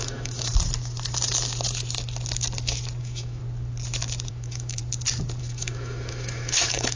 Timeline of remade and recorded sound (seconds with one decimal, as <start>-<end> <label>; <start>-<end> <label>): 0.0-0.5 remade; 0.5-3.0 recorded; 3.0-3.4 remade; 3.4-4.3 recorded; 4.3-4.8 remade; 4.8-5.4 recorded; 5.4-7.0 remade